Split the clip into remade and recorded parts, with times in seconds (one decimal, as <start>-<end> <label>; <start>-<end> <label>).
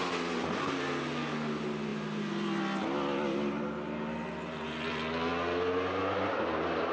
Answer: 0.0-6.9 recorded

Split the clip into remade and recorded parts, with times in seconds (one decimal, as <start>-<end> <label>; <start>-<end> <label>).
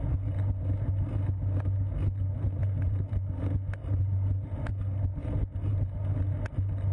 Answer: 0.0-6.9 recorded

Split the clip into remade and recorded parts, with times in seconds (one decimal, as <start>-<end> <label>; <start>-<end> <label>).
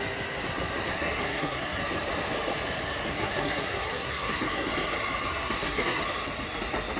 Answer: 0.0-0.9 recorded; 0.9-1.8 remade; 1.8-3.1 recorded; 3.1-4.7 remade; 4.7-5.3 recorded; 5.3-6.0 remade; 6.0-7.0 recorded